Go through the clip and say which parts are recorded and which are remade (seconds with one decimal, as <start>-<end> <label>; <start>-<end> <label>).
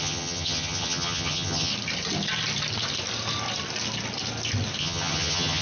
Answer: 0.0-1.7 remade; 1.7-4.8 recorded; 4.8-5.6 remade